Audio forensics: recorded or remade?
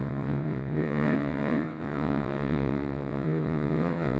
remade